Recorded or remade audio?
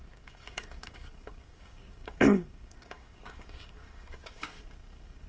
remade